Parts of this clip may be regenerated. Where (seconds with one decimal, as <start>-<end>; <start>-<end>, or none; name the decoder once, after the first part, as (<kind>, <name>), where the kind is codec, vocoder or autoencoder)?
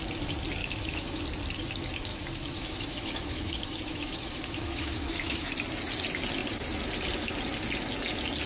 0.6-1.2 (autoencoder, DAC-VAE); 2.1-5.5